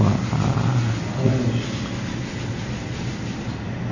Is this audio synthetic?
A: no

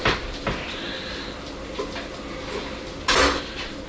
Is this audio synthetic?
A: no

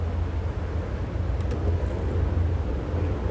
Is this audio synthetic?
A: no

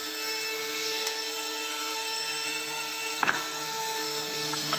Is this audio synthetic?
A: yes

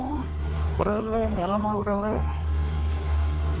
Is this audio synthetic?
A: yes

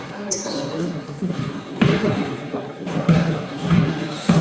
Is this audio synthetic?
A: yes